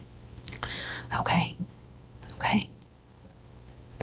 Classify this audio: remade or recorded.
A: remade